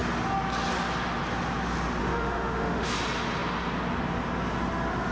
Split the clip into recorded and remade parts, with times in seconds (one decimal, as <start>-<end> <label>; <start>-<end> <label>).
0.0-2.0 recorded; 2.0-2.9 remade; 2.9-5.1 recorded